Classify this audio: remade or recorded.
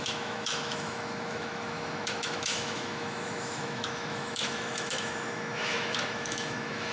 remade